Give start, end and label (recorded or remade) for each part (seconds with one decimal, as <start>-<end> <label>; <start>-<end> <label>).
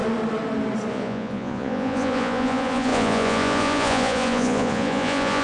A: 0.0-0.9 recorded; 0.9-5.4 remade